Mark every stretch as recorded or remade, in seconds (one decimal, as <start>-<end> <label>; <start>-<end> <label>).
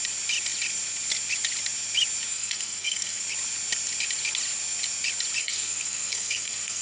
0.0-2.3 recorded; 2.3-3.2 remade; 3.2-5.4 recorded; 5.4-6.8 remade